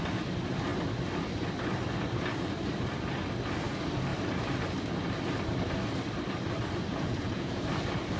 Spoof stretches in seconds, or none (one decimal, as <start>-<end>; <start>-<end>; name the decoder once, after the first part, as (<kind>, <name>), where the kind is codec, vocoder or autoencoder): 6.9-7.6 (vocoder, Vocos)